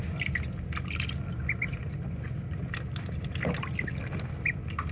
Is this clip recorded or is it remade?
recorded